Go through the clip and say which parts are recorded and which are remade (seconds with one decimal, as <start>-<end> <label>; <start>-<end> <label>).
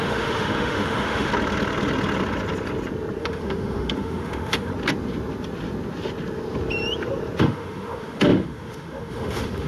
0.0-1.3 remade; 1.3-3.2 recorded; 3.2-4.7 remade; 4.7-7.4 recorded; 7.4-9.7 remade